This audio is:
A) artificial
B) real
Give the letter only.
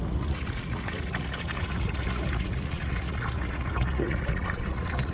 A